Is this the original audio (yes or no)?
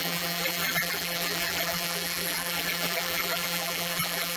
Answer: no